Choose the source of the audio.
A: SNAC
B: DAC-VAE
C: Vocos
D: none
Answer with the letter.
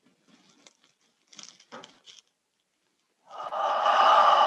D